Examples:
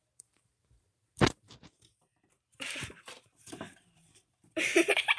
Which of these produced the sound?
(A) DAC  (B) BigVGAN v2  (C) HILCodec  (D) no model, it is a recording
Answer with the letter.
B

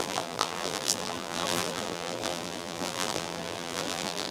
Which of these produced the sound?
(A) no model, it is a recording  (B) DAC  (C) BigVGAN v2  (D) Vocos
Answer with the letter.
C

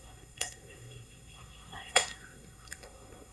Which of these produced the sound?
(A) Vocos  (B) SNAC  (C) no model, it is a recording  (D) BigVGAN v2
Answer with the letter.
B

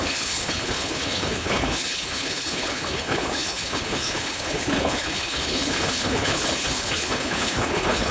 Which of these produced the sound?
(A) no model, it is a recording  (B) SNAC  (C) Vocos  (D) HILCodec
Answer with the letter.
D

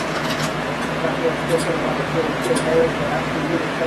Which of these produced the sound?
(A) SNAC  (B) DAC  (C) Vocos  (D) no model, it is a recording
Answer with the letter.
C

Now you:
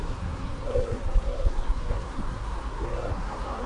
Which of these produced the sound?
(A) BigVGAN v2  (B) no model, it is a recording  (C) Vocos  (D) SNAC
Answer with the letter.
D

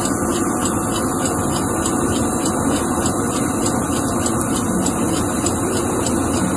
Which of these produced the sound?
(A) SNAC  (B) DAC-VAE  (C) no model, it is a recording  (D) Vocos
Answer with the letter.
C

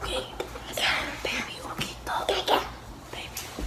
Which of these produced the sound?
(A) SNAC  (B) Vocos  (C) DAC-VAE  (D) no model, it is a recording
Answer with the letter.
D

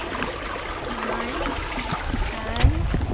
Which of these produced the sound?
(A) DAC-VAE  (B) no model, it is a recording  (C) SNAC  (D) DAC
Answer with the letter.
B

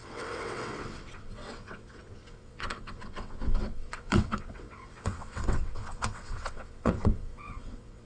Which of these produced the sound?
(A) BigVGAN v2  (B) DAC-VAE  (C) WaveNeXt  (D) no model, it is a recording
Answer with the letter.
C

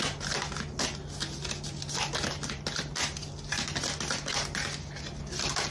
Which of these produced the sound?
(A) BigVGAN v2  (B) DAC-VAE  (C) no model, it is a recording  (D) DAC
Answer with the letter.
C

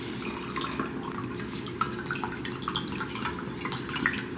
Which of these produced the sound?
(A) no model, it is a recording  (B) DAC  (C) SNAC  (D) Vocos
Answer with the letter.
A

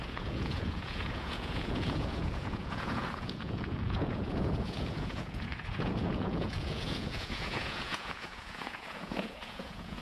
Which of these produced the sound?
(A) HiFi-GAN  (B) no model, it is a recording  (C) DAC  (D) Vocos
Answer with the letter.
D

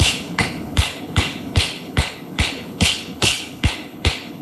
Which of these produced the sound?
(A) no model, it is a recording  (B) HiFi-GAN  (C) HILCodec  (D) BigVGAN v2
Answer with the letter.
C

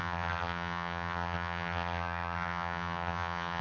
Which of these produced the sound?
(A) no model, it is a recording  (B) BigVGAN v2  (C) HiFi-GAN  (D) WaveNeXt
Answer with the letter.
C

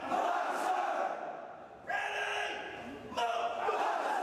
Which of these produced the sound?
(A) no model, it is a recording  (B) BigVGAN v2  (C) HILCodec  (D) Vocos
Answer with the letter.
A